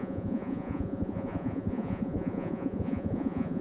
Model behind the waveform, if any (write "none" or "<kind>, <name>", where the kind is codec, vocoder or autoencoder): vocoder, Vocos